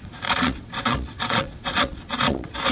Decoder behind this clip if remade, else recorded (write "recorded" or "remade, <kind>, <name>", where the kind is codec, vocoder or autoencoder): remade, vocoder, Vocos